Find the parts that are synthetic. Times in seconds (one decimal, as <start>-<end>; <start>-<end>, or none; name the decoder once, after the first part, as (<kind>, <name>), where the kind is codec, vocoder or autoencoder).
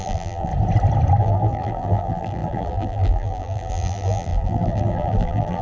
0.0-0.5 (vocoder, BigVGAN v2); 1.2-5.6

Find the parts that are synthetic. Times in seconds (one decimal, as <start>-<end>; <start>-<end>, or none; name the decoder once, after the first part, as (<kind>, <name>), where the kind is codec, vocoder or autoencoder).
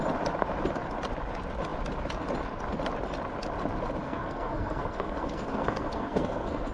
4.0-6.7 (codec, SNAC)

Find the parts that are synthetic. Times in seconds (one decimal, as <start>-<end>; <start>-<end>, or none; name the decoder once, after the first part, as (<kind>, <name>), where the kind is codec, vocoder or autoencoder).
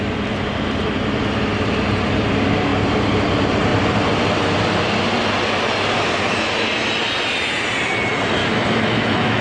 8.4-9.4 (autoencoder, DAC-VAE)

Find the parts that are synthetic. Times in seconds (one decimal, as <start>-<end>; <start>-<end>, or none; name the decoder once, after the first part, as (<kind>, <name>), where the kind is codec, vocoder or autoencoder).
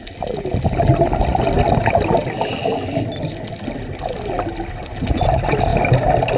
none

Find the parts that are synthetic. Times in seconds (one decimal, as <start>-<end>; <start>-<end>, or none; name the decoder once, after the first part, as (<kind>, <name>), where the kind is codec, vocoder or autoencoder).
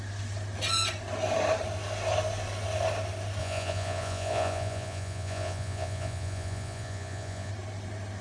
3.4-7.5 (vocoder, Vocos)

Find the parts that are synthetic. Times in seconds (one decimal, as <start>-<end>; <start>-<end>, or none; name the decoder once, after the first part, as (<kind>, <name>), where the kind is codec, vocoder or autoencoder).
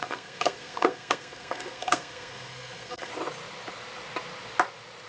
0.0-3.1 (codec, SNAC)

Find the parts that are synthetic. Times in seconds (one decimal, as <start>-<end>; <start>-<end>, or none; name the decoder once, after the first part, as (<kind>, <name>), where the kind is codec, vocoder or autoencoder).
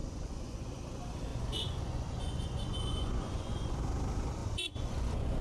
0.0-0.8 (vocoder, Vocos); 1.3-3.8; 4.4-5.4